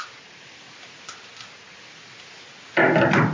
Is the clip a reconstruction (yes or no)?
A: no